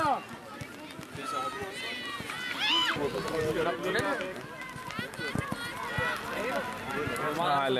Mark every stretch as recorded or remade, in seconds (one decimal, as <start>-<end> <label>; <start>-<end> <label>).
0.0-7.8 recorded